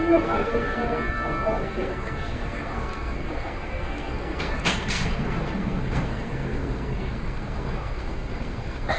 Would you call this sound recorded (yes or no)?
no